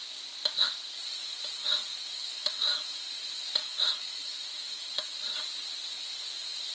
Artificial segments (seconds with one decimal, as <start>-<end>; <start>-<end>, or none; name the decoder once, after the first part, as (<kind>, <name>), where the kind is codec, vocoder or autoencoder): 2.3-3.0 (autoencoder, DAC-VAE); 3.6-5.2